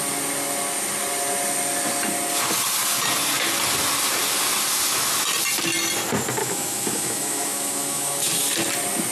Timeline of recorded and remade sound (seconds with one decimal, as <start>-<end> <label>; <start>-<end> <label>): 0.0-6.4 recorded; 6.4-8.3 remade; 8.3-9.1 recorded